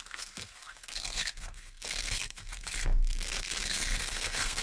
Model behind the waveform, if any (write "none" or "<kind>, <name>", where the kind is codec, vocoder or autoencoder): codec, SNAC